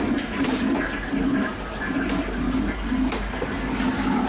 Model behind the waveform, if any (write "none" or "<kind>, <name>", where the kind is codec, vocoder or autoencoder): none